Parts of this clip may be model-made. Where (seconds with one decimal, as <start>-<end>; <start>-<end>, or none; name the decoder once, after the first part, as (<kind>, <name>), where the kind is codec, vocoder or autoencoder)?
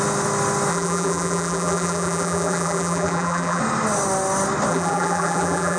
0.7-3.6 (vocoder, BigVGAN v2); 4.7-5.8